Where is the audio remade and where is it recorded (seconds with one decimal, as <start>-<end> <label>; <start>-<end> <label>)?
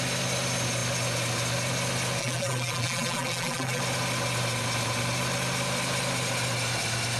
0.0-2.2 recorded; 2.2-3.8 remade; 3.8-7.2 recorded